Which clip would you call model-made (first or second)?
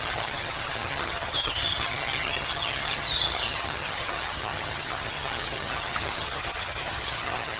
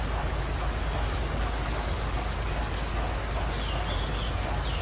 first